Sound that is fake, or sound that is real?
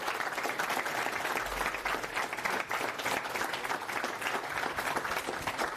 real